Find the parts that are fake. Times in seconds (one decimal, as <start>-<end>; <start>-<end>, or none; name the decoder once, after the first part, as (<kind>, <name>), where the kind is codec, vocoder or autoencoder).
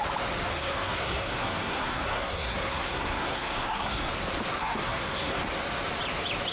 0.5-4.1 (codec, SNAC); 4.6-5.4